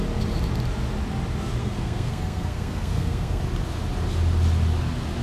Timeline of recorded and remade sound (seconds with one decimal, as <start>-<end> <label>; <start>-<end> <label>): 0.0-1.6 recorded; 1.6-3.4 remade; 3.4-5.2 recorded